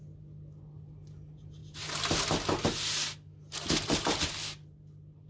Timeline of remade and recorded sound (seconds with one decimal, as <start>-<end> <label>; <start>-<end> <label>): 0.0-5.3 recorded